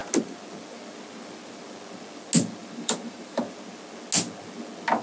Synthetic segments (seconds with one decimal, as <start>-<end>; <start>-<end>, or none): 2.6-3.4